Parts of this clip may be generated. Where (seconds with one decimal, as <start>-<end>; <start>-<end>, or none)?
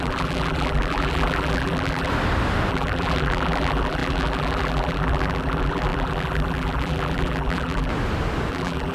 0.0-2.1; 2.7-7.9; 8.5-8.9